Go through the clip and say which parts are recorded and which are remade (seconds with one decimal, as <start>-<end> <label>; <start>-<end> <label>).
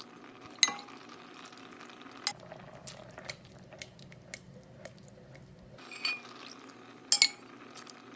0.0-8.2 recorded